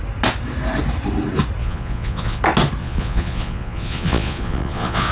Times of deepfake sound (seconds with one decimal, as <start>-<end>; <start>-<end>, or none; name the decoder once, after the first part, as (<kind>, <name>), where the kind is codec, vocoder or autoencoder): 1.6-2.4 (vocoder, Vocos); 2.8-5.1